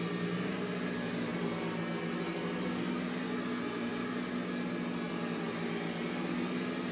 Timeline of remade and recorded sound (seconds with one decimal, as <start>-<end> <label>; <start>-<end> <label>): 0.0-6.9 recorded